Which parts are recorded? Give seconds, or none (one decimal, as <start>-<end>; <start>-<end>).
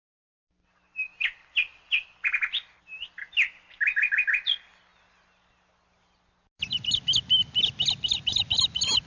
0.0-9.1